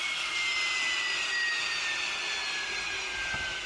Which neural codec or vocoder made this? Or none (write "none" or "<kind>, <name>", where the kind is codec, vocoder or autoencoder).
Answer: none